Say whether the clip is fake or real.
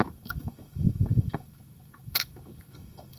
fake